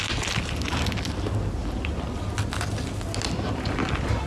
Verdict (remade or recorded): recorded